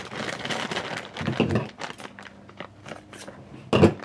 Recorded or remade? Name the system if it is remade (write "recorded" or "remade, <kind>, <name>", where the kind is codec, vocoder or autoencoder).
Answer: recorded